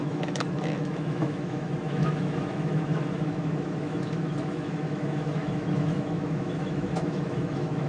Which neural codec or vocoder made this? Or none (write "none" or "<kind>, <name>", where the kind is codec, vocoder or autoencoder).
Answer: autoencoder, DAC-VAE